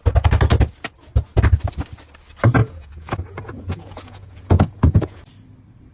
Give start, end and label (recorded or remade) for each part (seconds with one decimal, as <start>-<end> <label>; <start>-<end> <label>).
0.0-2.6 recorded; 2.6-5.2 remade; 5.2-5.9 recorded